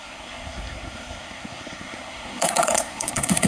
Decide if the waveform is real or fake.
fake